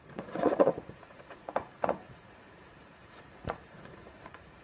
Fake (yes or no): yes